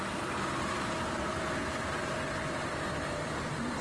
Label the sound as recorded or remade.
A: recorded